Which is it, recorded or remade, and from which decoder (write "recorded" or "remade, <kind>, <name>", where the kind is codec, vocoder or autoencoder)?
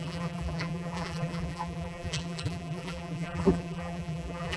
remade, vocoder, BigVGAN v2